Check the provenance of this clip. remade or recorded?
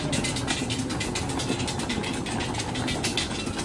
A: recorded